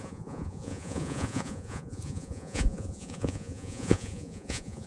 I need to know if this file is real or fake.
fake